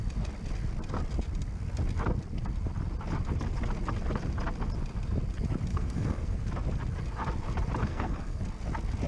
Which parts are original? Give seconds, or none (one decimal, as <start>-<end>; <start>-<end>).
0.0-5.7; 6.5-7.8; 8.4-9.1